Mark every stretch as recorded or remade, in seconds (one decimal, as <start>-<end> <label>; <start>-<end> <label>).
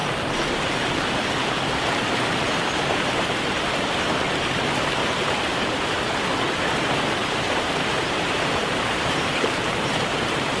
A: 0.0-4.3 remade; 4.3-5.0 recorded; 5.0-6.0 remade; 6.0-7.2 recorded; 7.2-10.6 remade